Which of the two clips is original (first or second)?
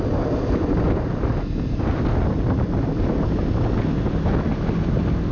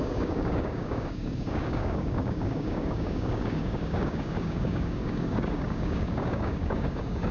first